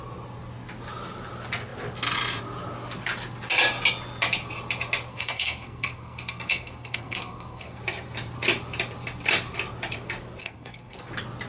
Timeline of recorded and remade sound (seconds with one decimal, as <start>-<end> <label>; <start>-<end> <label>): 0.0-5.1 recorded; 5.1-7.8 remade; 7.8-10.4 recorded; 10.4-11.1 remade; 11.1-11.5 recorded